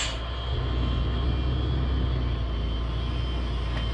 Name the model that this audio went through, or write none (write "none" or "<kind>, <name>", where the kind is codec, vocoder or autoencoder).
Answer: none